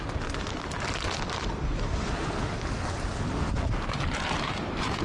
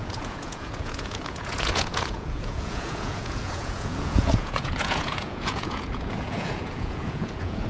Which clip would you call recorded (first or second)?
first